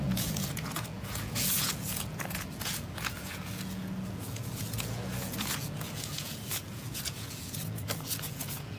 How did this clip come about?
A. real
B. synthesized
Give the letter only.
B